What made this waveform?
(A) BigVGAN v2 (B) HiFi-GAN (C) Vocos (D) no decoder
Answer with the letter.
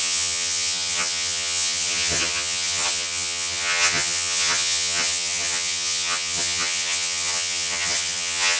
B